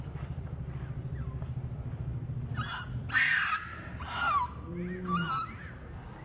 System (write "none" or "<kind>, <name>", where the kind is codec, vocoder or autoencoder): none